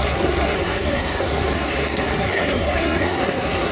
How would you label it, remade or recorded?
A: remade